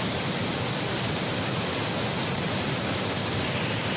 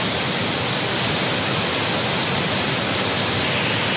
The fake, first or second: first